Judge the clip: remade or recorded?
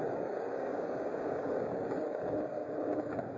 remade